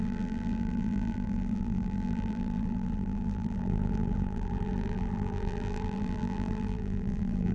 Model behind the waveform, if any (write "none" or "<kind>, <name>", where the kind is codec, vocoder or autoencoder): vocoder, BigVGAN v2